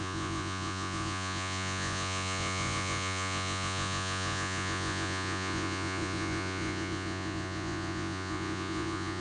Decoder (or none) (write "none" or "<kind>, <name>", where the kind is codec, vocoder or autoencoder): vocoder, Vocos